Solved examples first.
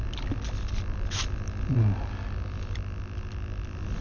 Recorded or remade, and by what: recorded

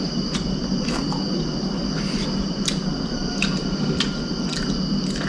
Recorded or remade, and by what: recorded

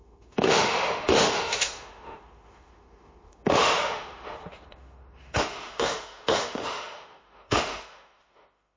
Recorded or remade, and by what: remade, autoencoder, DAC-VAE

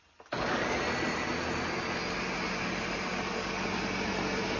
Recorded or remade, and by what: recorded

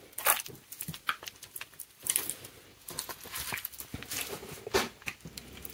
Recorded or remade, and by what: recorded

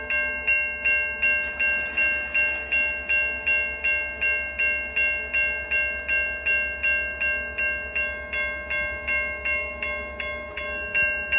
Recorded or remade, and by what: recorded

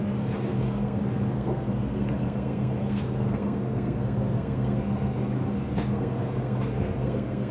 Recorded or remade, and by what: remade, codec, SNAC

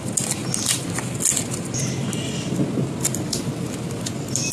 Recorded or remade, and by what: recorded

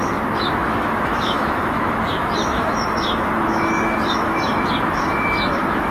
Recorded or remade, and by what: remade, autoencoder, DAC-VAE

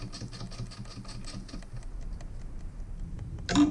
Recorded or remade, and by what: recorded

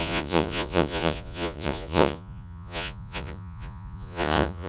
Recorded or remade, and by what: remade, vocoder, Vocos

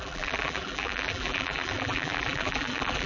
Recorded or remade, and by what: remade, vocoder, BigVGAN v2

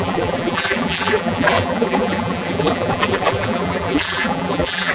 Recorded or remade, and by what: remade, vocoder, BigVGAN v2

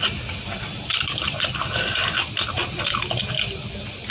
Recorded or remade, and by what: recorded